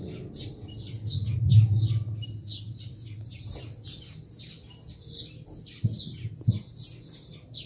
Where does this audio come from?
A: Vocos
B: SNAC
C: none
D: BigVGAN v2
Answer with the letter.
C